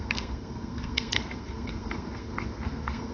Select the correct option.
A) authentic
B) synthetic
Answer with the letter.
B